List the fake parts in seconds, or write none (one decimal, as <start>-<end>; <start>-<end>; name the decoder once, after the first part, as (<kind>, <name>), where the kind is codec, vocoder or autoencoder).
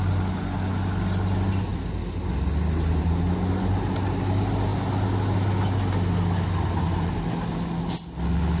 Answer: none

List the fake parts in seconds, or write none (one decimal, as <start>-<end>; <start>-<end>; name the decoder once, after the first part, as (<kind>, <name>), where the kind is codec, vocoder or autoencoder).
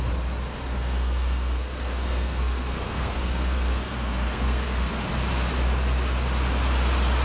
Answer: 0.6-4.9 (codec, SNAC)